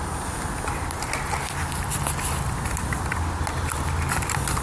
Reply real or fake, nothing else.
fake